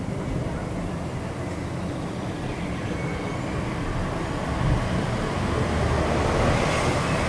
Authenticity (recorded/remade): recorded